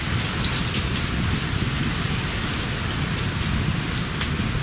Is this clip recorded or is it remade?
recorded